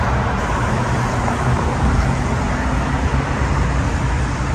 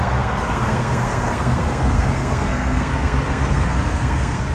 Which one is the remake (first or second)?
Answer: second